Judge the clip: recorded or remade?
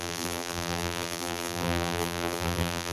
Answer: remade